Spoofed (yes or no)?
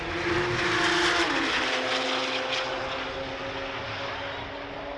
no